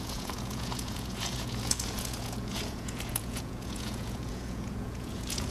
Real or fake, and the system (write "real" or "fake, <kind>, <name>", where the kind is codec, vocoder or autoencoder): fake, vocoder, Vocos